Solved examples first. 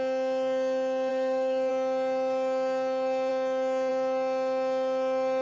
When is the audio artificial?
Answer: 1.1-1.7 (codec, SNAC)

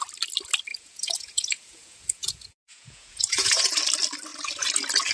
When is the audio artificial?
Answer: 0.7-3.8 (vocoder, Vocos)

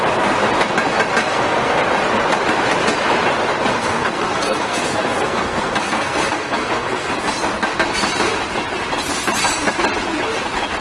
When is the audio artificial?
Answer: 1.2-1.7 (codec, SNAC); 3.7-7.1

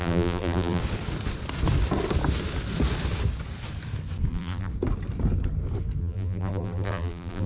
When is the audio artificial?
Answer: 0.0-0.8 (vocoder, BigVGAN v2); 4.3-4.7; 6.0-7.5

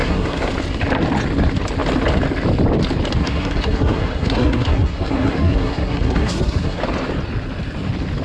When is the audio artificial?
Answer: 0.0-0.5 (codec, SNAC); 3.2-6.8

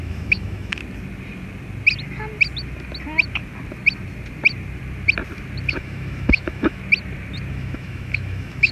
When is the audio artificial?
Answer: 0.0-0.8 (autoencoder, DAC-VAE); 5.7-6.8; 7.5-8.7